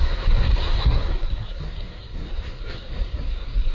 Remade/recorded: remade